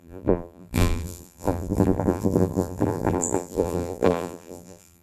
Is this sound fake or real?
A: fake